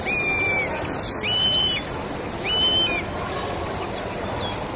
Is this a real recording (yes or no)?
yes